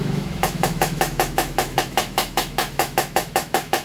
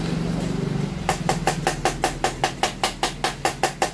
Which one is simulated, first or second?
first